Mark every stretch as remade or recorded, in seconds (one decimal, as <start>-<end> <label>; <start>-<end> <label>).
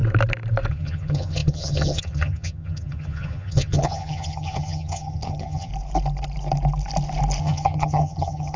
0.0-0.7 recorded; 0.7-5.7 remade; 5.7-7.4 recorded; 7.4-8.6 remade